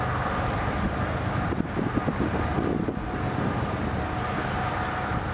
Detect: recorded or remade recorded